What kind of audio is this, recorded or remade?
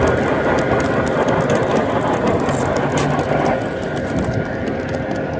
recorded